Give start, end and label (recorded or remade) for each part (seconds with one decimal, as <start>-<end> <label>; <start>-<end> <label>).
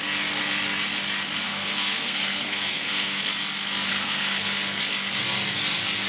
0.0-1.5 recorded; 1.5-3.2 remade; 3.2-3.9 recorded; 3.9-4.8 remade; 4.8-6.1 recorded